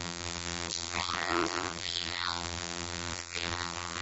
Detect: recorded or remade remade